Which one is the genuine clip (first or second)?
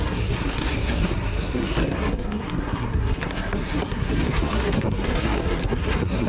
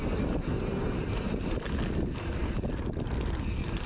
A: second